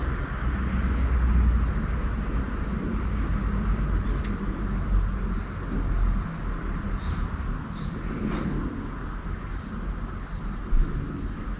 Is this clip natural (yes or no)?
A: yes